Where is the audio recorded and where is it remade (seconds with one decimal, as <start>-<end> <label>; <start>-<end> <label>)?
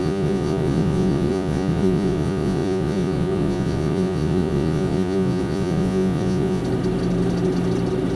0.0-6.6 remade; 6.6-8.2 recorded